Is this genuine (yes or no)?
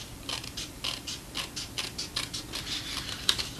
no